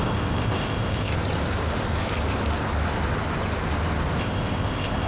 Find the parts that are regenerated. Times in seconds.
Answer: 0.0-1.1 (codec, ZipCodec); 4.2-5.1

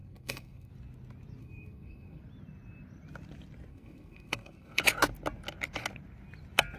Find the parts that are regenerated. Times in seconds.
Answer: 0.0-0.7 (codec, SNAC); 1.4-2.2; 3.7-4.8

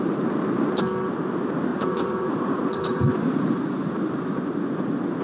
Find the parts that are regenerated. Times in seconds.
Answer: 1.7-3.9 (vocoder, Vocos)